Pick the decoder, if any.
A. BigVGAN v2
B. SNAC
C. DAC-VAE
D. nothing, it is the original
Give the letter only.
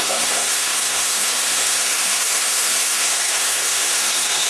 B